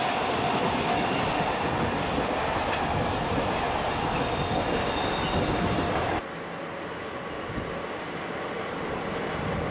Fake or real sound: real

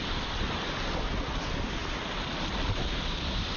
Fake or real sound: real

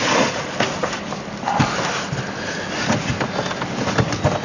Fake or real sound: real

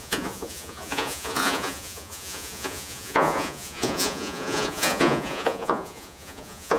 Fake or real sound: fake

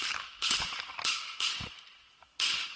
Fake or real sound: real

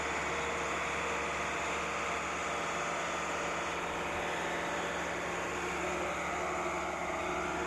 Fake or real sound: real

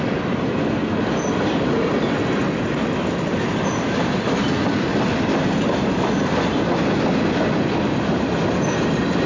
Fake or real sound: real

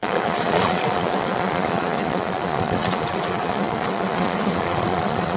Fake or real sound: fake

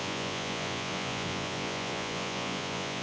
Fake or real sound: fake